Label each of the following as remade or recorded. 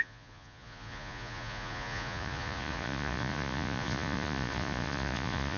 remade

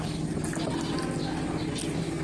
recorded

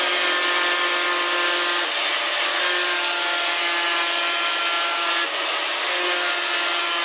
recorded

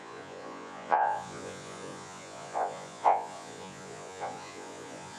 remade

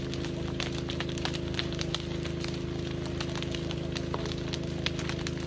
recorded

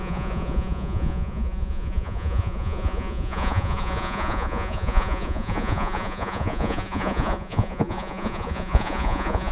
remade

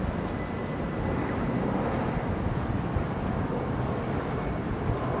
recorded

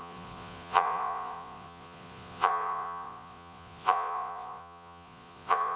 remade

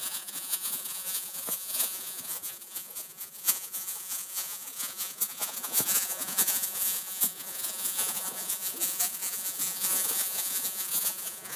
remade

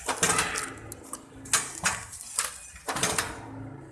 recorded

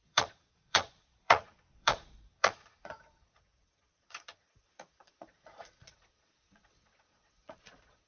remade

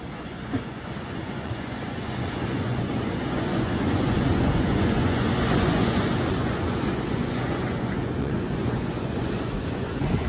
remade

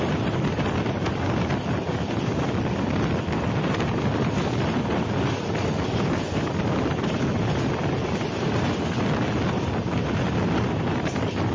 recorded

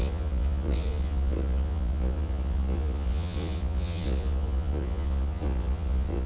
remade